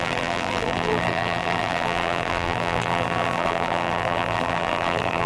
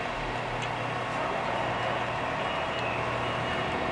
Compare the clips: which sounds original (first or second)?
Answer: second